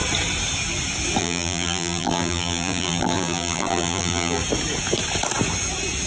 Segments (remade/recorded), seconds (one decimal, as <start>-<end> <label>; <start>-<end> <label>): 0.0-1.2 recorded; 1.2-4.4 remade; 4.4-6.1 recorded